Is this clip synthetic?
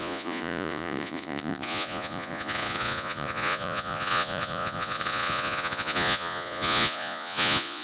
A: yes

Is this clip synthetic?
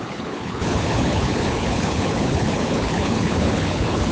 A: yes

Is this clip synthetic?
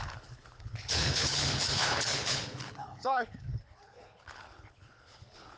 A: yes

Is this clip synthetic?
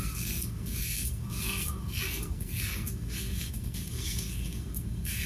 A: yes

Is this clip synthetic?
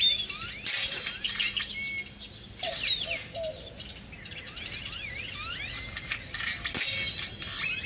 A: no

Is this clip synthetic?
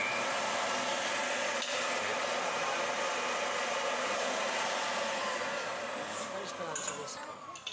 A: no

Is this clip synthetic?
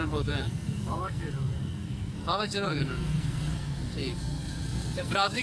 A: yes